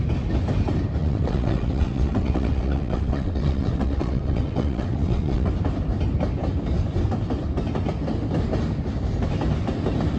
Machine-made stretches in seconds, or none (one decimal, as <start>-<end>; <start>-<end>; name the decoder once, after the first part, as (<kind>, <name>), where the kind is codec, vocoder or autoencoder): 1.0-5.5 (vocoder, WaveNeXt)